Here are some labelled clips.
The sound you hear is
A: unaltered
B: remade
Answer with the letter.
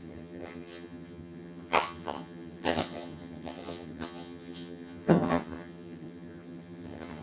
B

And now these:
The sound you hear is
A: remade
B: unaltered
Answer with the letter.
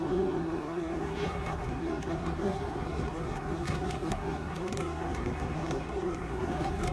A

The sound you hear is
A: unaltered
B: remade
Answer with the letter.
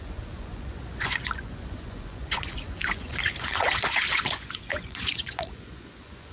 B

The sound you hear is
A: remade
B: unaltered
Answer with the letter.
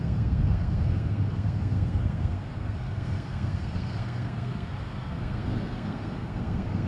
A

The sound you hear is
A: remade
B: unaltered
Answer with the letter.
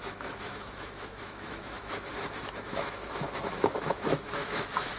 A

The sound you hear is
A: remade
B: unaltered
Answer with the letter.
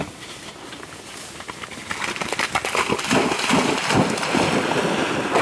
B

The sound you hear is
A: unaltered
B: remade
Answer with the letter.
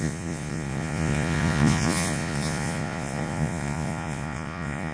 B